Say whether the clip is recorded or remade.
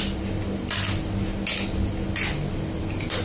recorded